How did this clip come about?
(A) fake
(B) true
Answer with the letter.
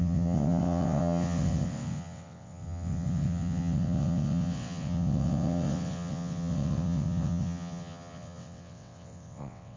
A